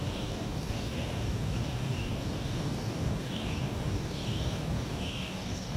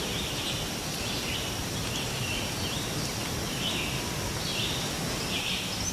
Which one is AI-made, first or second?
first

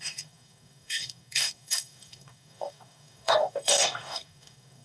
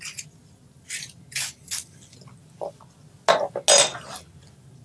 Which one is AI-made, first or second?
first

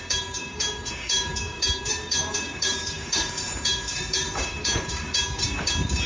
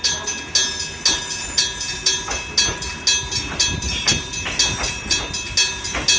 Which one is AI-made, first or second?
first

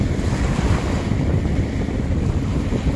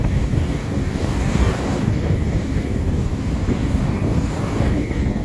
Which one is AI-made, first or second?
second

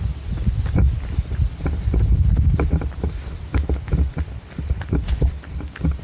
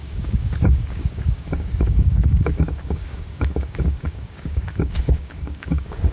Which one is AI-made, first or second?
second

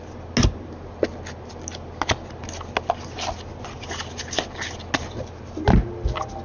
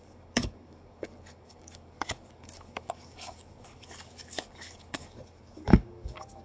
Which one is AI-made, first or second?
second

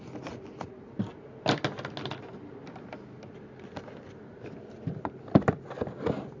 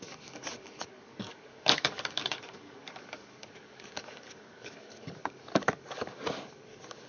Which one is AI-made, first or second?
second